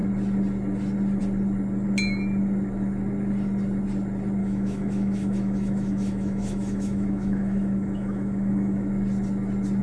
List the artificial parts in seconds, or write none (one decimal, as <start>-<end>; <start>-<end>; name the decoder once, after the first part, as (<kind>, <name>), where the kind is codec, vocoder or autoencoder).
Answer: 4.4-8.9 (autoencoder, DAC-VAE)